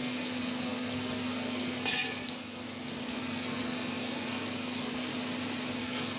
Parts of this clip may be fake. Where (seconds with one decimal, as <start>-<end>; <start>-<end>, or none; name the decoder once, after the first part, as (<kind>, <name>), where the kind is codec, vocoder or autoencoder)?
0.0-5.1 (codec, SNAC); 5.8-6.2